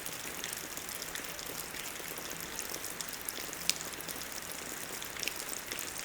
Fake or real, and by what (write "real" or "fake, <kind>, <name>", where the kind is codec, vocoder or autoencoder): real